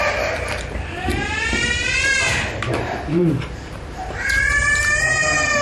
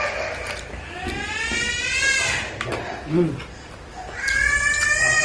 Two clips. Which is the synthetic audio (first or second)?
first